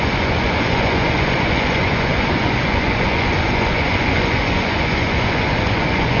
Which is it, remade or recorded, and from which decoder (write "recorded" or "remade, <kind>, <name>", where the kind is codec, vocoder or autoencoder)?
remade, vocoder, Vocos